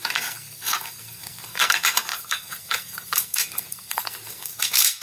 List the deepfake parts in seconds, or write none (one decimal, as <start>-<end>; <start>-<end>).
0.0-5.0